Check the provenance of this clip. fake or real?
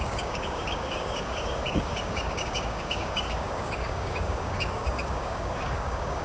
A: fake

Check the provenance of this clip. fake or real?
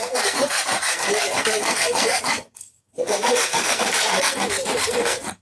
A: fake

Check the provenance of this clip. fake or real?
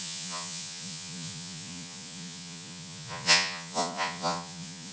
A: fake